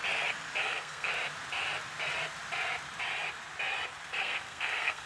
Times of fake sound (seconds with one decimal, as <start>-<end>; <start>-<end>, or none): 0.6-1.1; 4.2-5.1

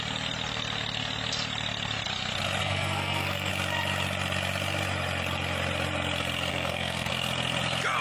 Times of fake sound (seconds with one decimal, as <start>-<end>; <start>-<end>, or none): 2.6-3.5; 6.5-7.1

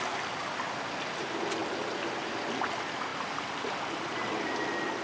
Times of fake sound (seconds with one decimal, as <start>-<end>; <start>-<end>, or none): none

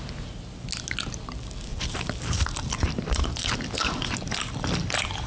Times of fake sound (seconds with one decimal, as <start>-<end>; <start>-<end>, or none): 1.7-5.3

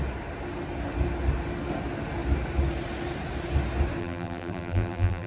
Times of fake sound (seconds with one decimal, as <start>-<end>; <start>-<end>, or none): 4.0-5.3

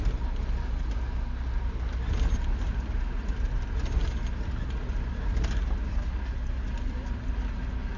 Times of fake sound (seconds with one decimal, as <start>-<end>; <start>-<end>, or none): none